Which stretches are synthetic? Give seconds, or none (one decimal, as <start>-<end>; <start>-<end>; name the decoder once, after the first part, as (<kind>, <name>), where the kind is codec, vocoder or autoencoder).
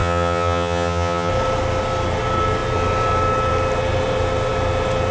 0.0-1.3 (vocoder, HiFi-GAN)